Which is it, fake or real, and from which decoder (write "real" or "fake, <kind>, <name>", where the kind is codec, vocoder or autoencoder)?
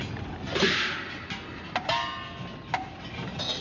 real